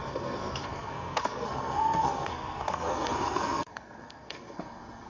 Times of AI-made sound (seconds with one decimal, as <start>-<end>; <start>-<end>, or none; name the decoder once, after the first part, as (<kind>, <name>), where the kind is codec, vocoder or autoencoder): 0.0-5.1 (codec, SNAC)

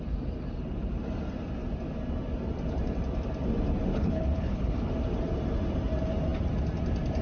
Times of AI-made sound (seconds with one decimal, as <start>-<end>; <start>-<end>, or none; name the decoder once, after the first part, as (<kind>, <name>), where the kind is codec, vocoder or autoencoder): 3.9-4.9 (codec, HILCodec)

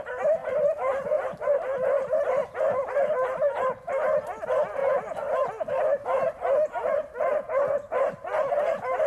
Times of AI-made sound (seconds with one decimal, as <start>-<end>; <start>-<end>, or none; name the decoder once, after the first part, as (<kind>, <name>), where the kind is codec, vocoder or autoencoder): 0.4-1.0 (vocoder, BigVGAN v2)

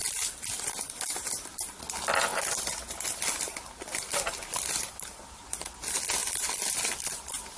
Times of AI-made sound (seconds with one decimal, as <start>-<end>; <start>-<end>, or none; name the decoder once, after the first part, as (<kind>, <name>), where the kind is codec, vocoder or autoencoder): none

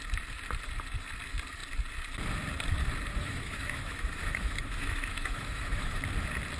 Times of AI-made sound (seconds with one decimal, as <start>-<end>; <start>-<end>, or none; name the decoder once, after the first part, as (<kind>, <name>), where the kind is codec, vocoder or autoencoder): 3.2-6.0 (autoencoder, DAC-VAE)

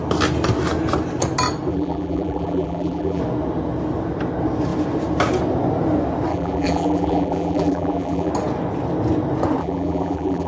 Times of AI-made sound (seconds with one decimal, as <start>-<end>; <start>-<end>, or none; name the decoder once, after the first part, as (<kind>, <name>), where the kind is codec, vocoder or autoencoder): 1.7-3.2 (vocoder, BigVGAN v2); 6.3-8.3; 9.6-10.5

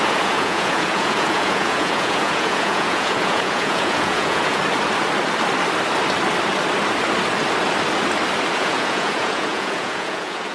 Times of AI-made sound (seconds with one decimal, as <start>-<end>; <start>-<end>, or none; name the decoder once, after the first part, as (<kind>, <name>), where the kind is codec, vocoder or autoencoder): 0.0-4.6 (vocoder, Vocos); 8.5-10.5

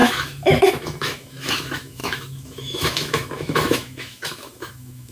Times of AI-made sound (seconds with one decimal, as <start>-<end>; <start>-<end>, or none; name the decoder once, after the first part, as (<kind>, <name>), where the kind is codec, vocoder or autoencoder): 0.0-5.1 (autoencoder, DAC-VAE)